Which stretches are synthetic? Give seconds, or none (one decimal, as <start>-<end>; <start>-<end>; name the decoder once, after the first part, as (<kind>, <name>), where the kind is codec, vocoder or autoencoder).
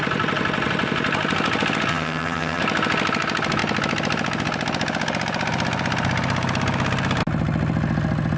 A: 1.9-2.6 (vocoder, HiFi-GAN)